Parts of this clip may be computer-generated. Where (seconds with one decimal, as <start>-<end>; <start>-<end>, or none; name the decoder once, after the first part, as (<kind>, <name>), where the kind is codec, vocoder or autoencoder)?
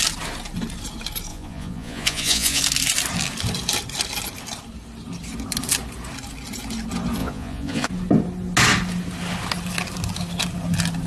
1.3-2.6 (vocoder, Vocos); 7.2-7.9